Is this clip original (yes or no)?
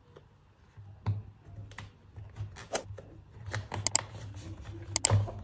yes